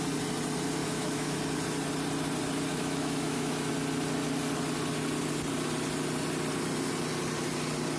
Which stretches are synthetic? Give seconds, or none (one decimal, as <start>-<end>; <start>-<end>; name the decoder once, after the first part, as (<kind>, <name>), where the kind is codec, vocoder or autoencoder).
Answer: 0.8-1.4 (autoencoder, DAC-VAE); 2.7-3.7